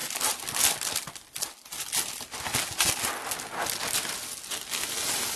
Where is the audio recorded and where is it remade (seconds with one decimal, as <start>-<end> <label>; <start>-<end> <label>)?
0.0-5.4 recorded